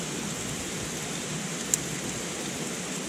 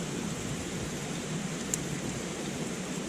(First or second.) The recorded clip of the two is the first